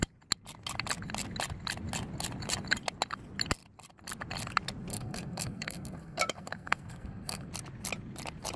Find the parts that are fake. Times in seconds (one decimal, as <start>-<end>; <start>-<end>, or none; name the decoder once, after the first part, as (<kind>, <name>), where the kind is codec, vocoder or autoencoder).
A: 4.9-7.5 (codec, SNAC)